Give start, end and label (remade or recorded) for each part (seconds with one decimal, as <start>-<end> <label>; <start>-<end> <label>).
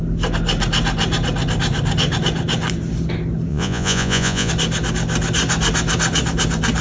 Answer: 0.0-3.5 recorded; 3.5-4.5 remade; 4.5-6.8 recorded